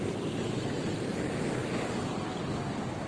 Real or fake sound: real